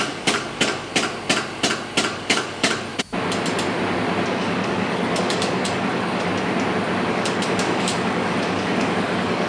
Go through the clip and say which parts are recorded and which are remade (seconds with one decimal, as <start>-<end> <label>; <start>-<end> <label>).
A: 0.0-0.9 remade; 0.9-2.1 recorded; 2.1-2.9 remade; 2.9-4.3 recorded; 4.3-6.3 remade; 6.3-7.1 recorded; 7.1-9.5 remade